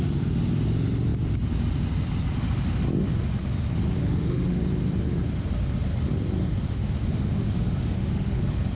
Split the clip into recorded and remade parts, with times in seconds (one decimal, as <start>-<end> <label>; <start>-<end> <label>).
0.0-4.0 recorded; 4.0-4.6 remade; 4.6-6.7 recorded; 6.7-8.4 remade; 8.4-8.8 recorded